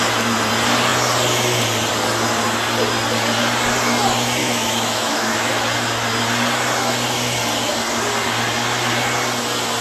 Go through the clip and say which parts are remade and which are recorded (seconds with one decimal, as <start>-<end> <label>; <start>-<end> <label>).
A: 0.0-4.4 recorded; 4.4-5.5 remade; 5.5-9.8 recorded

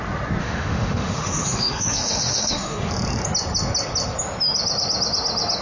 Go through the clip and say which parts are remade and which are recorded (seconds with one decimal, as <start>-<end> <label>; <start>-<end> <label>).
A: 0.0-0.4 recorded; 0.4-2.9 remade; 2.9-5.6 recorded

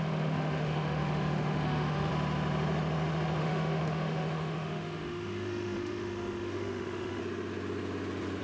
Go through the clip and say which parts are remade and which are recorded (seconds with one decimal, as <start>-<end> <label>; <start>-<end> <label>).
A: 0.0-2.1 remade; 2.1-3.4 recorded; 3.4-7.2 remade; 7.2-8.4 recorded

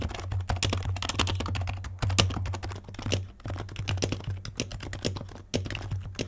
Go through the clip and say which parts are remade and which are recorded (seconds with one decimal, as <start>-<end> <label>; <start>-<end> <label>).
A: 0.0-6.3 recorded

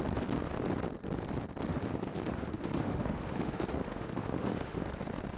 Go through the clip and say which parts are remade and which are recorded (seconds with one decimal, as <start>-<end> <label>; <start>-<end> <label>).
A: 0.0-1.7 recorded; 1.7-4.9 remade; 4.9-5.4 recorded

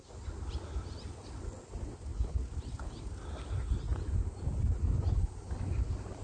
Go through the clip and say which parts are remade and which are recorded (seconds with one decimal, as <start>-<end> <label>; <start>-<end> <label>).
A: 0.0-6.2 recorded

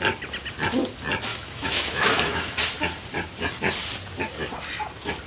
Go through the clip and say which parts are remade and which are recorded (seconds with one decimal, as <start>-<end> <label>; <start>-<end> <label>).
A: 0.0-1.3 recorded; 1.3-2.5 remade; 2.5-5.3 recorded

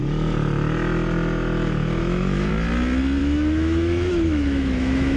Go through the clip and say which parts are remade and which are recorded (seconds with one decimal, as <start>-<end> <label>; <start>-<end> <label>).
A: 0.0-2.0 recorded; 2.0-2.5 remade; 2.5-3.2 recorded; 3.2-5.2 remade